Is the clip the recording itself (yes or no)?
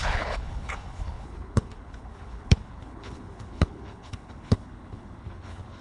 no